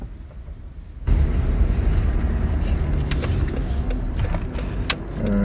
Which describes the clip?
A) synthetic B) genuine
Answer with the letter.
B